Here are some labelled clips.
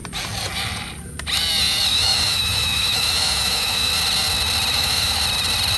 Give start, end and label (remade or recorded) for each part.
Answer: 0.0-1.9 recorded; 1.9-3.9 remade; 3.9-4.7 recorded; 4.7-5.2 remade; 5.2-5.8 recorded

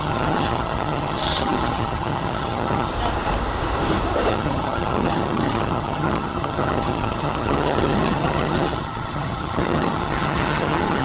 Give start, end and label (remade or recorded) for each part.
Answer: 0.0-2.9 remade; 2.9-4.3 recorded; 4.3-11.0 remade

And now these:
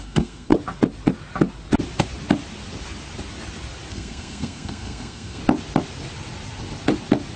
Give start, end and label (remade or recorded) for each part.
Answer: 0.0-0.5 remade; 0.5-3.9 recorded; 3.9-5.4 remade; 5.4-7.4 recorded